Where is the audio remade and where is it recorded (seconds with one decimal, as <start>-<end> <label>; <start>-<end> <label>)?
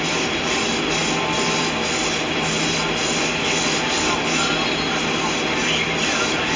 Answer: 0.0-6.6 recorded